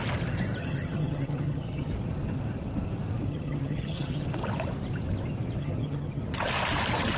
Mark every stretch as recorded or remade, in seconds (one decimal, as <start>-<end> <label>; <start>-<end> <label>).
0.0-0.6 recorded; 0.6-1.9 remade; 1.9-3.3 recorded; 3.3-4.2 remade; 4.2-5.6 recorded; 5.6-6.2 remade; 6.2-7.2 recorded